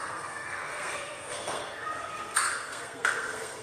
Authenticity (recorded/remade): remade